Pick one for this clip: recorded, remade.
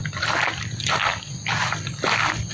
recorded